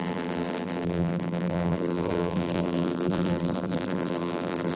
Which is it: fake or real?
fake